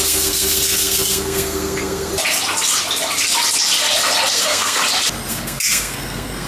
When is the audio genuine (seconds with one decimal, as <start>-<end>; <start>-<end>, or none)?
2.1-4.3; 4.8-5.3